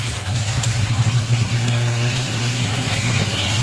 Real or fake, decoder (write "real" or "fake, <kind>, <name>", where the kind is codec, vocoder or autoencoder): fake, codec, SNAC